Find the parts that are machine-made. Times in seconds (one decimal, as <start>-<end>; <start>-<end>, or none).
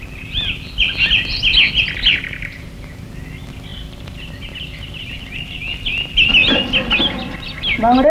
2.1-3.1; 3.7-5.2